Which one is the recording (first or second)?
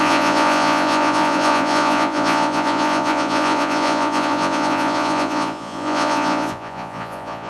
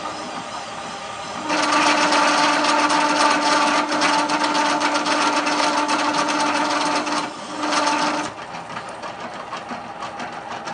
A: second